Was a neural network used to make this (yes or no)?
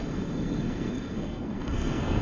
yes